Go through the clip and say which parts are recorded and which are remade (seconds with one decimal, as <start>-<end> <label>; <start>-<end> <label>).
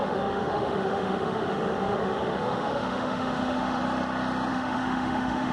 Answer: 0.0-3.8 remade; 3.8-4.5 recorded; 4.5-5.5 remade